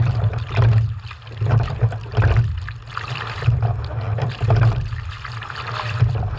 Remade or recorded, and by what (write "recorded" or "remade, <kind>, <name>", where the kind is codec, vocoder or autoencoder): recorded